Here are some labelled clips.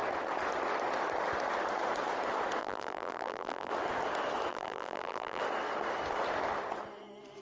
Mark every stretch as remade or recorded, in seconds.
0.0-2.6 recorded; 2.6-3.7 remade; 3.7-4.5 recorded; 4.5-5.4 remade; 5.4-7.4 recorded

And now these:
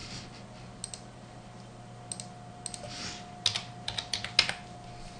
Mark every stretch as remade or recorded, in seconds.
0.0-5.2 recorded

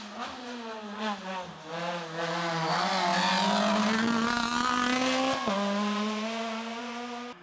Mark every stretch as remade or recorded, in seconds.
0.0-7.4 recorded

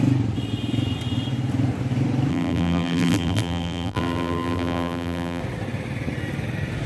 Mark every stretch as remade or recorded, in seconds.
0.0-2.3 recorded; 2.3-5.4 remade; 5.4-6.9 recorded

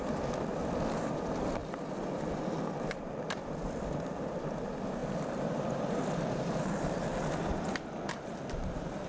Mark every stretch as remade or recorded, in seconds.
0.0-1.6 remade; 1.6-2.6 recorded; 2.6-7.1 remade; 7.1-8.1 recorded; 8.1-9.1 remade

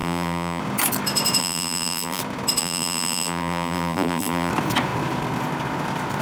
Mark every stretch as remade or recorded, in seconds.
0.0-0.6 remade; 0.6-1.4 recorded; 1.4-2.2 remade; 2.2-2.6 recorded; 2.6-4.5 remade; 4.5-6.2 recorded